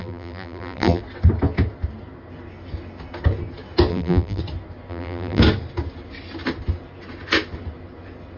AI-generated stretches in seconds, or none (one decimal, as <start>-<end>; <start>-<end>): 0.0-1.0; 3.9-4.4; 4.9-5.4

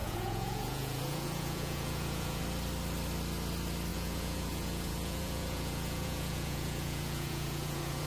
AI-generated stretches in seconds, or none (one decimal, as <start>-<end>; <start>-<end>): 0.0-2.4; 3.9-8.1

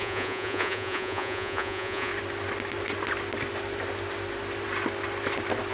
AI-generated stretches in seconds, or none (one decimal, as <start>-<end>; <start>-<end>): 0.0-2.1

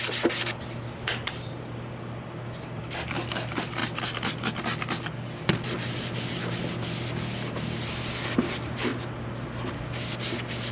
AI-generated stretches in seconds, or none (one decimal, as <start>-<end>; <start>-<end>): none

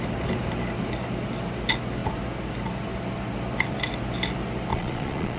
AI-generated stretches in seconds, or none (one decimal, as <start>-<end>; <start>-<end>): 4.7-5.4

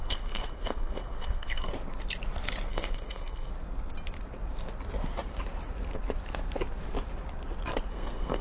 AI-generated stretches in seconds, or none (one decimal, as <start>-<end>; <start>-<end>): 0.0-1.7; 2.7-3.5; 7.9-8.4